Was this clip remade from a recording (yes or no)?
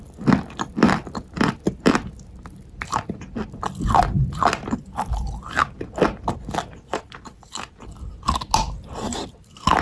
no